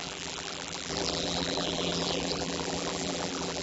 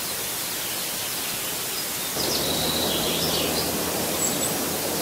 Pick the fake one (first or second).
first